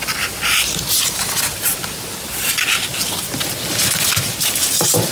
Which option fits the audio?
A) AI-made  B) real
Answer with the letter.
B